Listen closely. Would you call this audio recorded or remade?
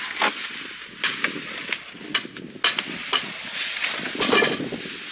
recorded